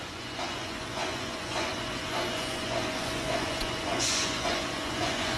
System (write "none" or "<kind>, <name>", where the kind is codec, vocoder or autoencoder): vocoder, Vocos